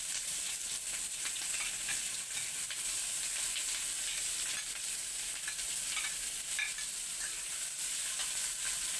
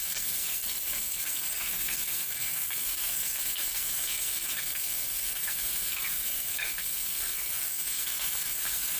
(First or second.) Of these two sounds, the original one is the first